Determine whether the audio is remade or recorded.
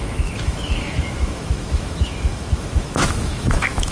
remade